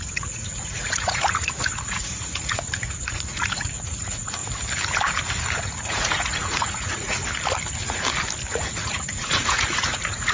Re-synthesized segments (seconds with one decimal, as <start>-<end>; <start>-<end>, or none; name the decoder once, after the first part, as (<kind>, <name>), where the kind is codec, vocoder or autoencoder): 0.0-4.4 (vocoder, Vocos); 5.6-7.2; 8.8-10.3